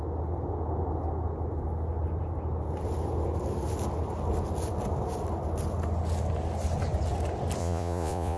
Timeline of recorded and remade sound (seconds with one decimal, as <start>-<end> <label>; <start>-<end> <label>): 0.0-7.6 recorded; 7.6-8.4 remade